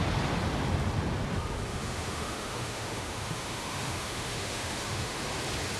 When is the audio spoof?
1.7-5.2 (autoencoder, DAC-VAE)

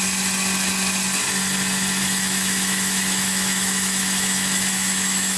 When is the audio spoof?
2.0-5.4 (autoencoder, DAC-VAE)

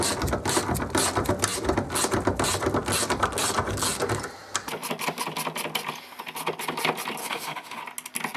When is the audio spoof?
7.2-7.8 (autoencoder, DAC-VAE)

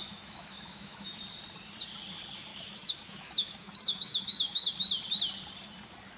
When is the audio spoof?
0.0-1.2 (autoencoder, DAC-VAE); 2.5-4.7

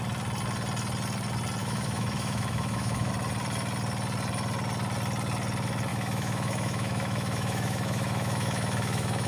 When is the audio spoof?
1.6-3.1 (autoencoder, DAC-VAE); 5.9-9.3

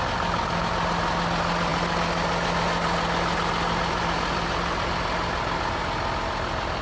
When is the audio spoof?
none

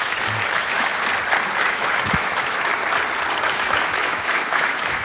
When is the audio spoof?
0.0-0.9 (autoencoder, DAC-VAE); 1.7-2.7; 3.4-5.0

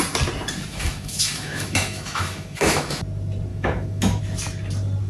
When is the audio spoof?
0.7-3.0 (autoencoder, DAC-VAE); 3.5-4.2